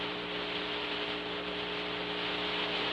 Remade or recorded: recorded